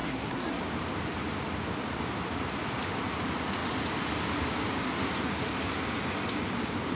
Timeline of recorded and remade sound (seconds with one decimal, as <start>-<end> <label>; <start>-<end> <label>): 0.0-0.6 remade; 0.6-6.9 recorded